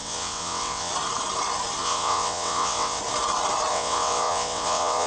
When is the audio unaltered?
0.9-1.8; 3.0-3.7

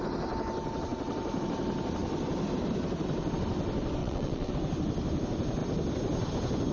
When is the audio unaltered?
0.0-4.0; 4.5-6.7

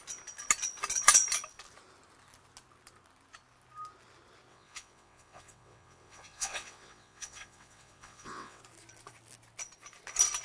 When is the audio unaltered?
0.0-4.5; 8.6-10.4

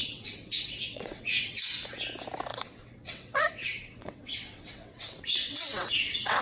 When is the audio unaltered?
1.6-2.5

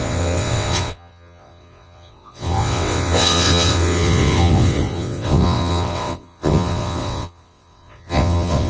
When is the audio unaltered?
none

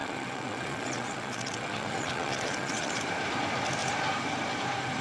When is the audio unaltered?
3.0-5.0

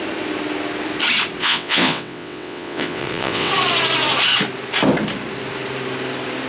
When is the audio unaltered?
0.0-1.4; 3.5-6.5

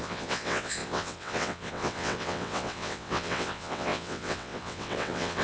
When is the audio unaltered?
none